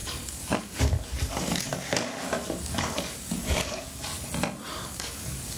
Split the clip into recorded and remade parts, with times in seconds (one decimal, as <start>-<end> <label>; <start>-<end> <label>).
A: 0.0-4.1 remade; 4.1-4.7 recorded; 4.7-5.6 remade